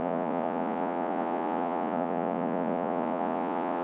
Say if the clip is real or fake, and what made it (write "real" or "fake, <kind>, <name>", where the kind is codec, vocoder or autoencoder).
fake, vocoder, Vocos